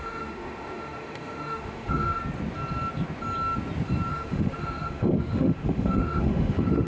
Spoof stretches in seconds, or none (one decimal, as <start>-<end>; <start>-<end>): 0.0-2.2; 4.1-6.9